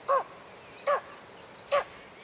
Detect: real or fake real